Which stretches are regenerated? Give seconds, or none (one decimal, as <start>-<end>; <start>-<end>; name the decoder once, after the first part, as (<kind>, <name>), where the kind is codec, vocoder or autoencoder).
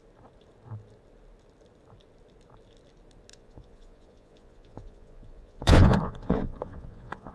3.3-7.3 (vocoder, Vocos)